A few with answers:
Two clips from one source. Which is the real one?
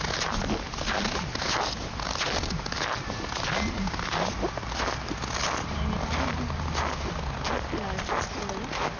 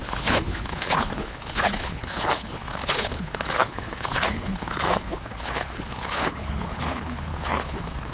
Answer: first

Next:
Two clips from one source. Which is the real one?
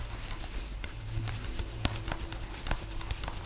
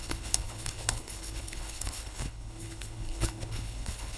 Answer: first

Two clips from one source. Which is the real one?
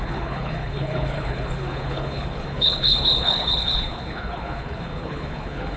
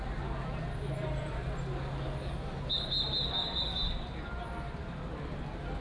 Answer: second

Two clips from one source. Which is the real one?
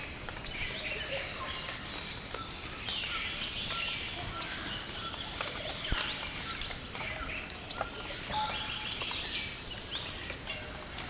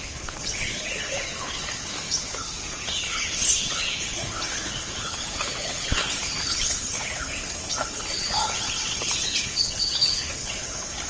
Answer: first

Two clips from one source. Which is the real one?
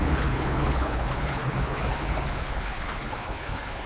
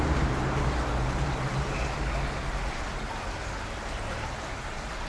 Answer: second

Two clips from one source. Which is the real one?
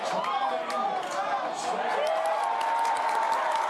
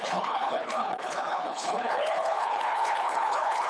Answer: first